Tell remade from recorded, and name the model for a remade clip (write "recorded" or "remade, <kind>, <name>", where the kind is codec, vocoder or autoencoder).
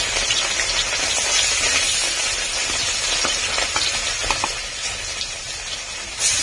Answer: recorded